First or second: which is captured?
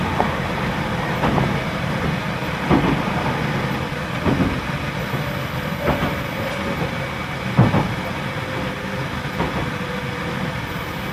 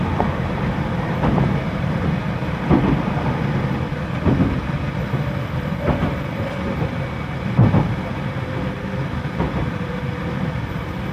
first